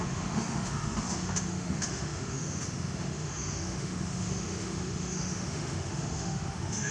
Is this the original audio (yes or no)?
no